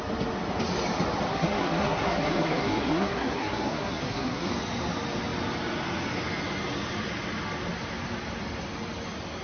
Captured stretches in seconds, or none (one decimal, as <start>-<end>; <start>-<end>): 0.0-1.3; 4.5-9.4